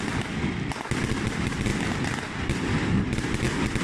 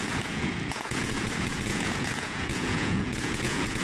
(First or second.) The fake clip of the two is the second